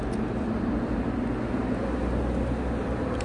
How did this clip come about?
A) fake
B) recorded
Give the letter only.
B